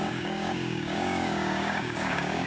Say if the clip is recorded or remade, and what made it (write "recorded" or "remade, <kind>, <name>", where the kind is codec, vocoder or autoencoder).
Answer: remade, codec, DAC